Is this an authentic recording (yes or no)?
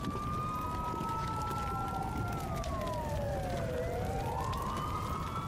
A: yes